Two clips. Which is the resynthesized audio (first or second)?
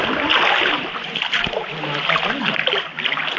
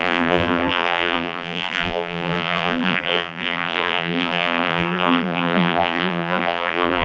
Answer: second